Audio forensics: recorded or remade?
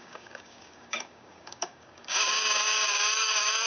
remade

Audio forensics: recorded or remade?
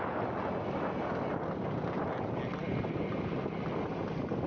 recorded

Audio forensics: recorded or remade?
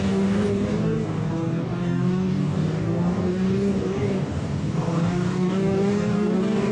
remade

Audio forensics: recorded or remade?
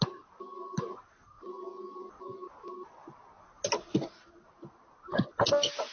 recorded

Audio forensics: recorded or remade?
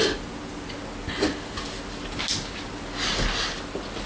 recorded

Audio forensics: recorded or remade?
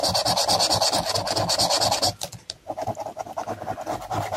recorded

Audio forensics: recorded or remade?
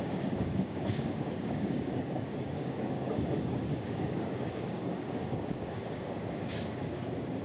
remade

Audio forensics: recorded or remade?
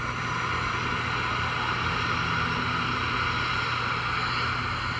recorded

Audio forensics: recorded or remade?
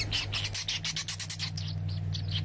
recorded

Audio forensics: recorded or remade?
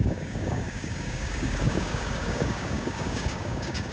remade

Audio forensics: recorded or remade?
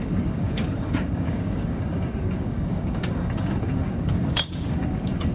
remade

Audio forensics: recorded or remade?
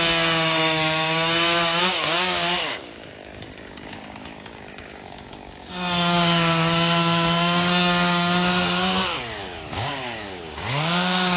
remade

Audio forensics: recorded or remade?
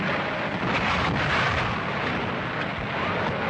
recorded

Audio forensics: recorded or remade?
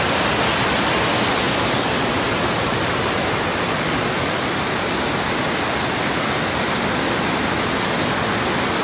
recorded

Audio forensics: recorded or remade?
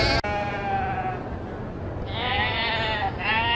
recorded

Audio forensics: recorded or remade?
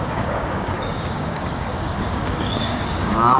remade